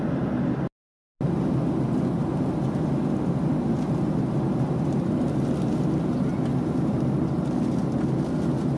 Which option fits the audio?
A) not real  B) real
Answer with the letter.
B